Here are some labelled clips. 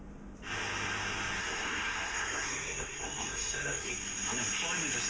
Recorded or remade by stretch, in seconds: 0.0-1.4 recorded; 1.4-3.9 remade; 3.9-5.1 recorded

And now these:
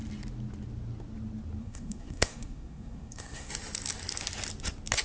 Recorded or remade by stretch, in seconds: 0.0-1.6 recorded; 1.6-3.5 remade; 3.5-5.0 recorded

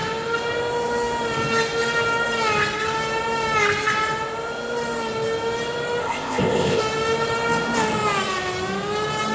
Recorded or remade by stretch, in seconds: 0.0-6.0 recorded; 6.0-6.8 remade; 6.8-9.3 recorded